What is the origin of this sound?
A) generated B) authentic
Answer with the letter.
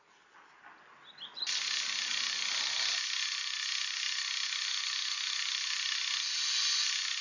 B